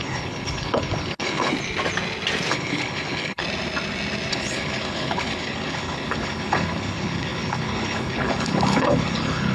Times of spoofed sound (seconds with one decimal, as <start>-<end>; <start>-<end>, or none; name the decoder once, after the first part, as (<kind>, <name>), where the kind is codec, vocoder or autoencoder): 0.0-1.5 (codec, HILCodec); 2.5-3.4; 4.3-9.5